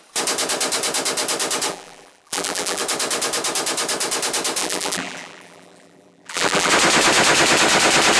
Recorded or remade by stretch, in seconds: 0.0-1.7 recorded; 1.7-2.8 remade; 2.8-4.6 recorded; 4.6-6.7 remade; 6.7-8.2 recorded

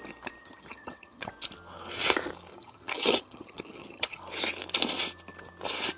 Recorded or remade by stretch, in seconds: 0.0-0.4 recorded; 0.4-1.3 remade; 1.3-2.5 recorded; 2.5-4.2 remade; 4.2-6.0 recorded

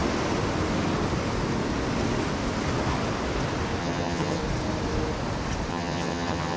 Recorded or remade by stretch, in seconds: 0.0-3.8 recorded; 3.8-4.4 remade; 4.4-5.7 recorded; 5.7-6.6 remade